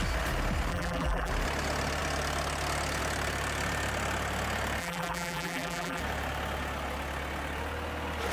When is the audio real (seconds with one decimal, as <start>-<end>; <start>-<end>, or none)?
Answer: 0.0-0.7; 1.3-4.8; 6.0-8.3